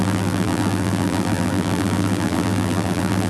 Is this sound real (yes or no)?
no